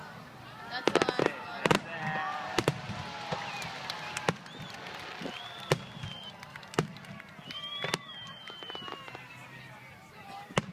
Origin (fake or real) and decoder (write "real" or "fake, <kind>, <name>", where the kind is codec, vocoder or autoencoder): real